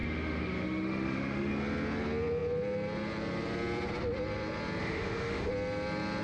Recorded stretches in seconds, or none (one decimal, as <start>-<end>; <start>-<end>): 1.5-4.8; 5.5-6.2